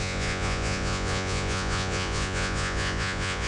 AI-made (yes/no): yes